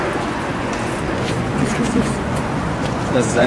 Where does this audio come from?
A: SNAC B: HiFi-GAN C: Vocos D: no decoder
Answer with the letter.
C